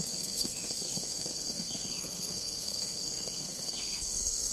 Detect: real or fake fake